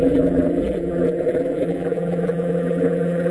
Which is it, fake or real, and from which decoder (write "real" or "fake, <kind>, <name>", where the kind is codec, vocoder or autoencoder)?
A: fake, vocoder, BigVGAN v2